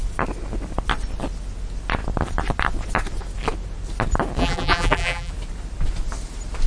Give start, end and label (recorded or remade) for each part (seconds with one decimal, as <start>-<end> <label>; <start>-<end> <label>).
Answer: 0.0-4.4 recorded; 4.4-5.3 remade; 5.3-6.7 recorded